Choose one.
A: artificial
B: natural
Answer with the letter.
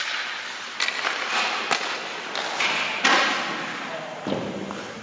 B